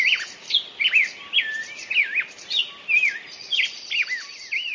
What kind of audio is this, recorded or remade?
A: recorded